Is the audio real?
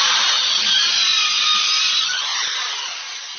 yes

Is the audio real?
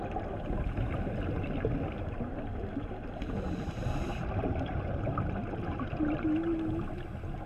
yes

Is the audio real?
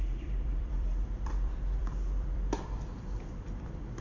no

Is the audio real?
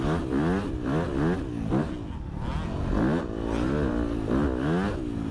yes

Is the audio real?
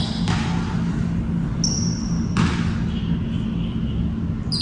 yes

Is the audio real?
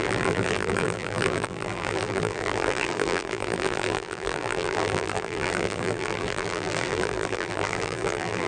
no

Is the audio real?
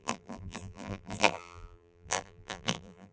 no